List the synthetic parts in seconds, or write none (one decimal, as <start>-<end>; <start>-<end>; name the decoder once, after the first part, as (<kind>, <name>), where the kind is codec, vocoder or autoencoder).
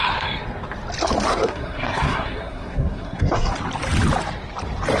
1.3-3.5 (codec, SNAC)